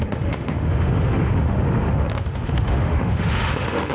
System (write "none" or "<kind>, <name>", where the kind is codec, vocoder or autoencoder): autoencoder, DAC-VAE